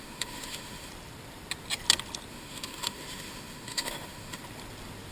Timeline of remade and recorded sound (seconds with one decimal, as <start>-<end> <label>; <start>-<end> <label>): 0.0-0.9 remade; 0.9-2.3 recorded; 2.3-4.4 remade; 4.4-5.1 recorded